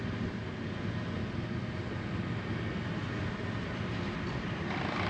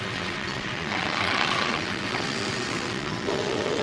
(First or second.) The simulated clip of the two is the second